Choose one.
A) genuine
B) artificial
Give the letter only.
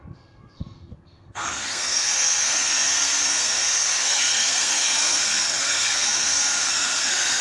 B